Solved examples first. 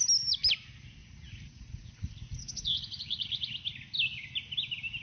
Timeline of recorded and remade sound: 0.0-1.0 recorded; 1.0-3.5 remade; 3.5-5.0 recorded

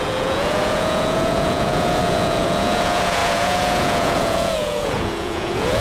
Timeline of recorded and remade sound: 0.0-5.8 remade

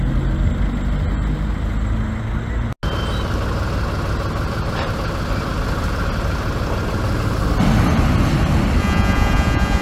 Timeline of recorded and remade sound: 0.0-8.8 recorded; 8.8-9.8 remade

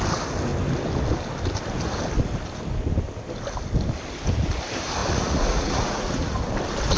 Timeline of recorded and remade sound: 0.0-5.0 recorded; 5.0-6.4 remade; 6.4-7.0 recorded

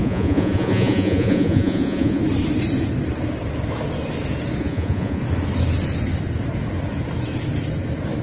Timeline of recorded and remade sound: 0.0-2.2 remade; 2.2-4.6 recorded; 4.6-5.2 remade; 5.2-8.2 recorded

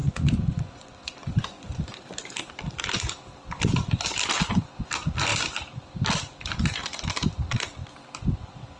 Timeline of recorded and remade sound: 0.0-1.8 remade; 1.8-8.8 recorded

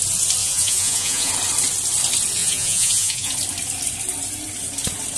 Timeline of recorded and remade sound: 0.0-0.4 recorded; 0.4-1.3 remade; 1.3-2.4 recorded; 2.4-3.3 remade; 3.3-5.2 recorded